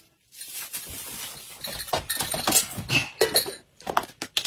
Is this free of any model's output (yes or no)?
yes